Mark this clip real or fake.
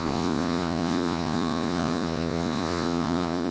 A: fake